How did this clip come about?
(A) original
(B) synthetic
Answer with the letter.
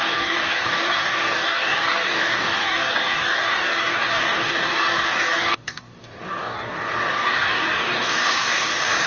B